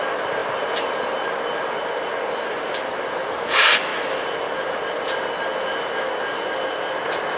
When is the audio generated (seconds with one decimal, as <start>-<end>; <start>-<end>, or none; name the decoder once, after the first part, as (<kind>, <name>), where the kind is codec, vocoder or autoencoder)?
none